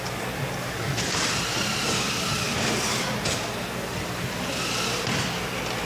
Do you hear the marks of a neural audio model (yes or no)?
no